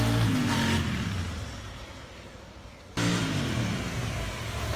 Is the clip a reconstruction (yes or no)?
no